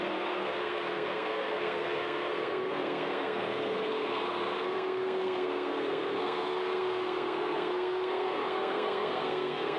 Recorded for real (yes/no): no